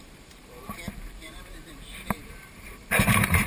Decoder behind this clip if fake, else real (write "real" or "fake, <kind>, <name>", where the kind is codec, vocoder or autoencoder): fake, vocoder, BigVGAN v2